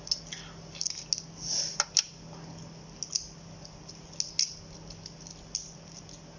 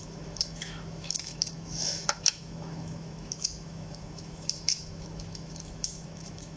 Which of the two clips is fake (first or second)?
second